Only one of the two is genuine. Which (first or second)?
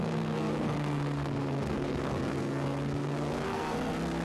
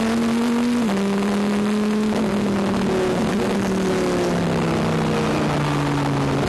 second